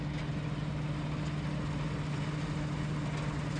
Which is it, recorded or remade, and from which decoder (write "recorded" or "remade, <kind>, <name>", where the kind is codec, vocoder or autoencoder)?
recorded